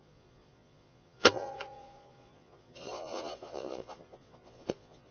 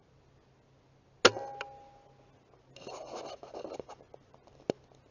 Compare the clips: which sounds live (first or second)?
second